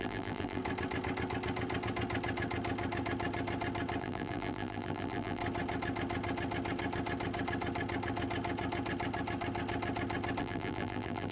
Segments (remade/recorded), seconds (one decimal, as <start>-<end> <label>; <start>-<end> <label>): 0.0-0.6 remade; 0.6-4.0 recorded; 4.0-5.4 remade; 5.4-10.4 recorded; 10.4-11.3 remade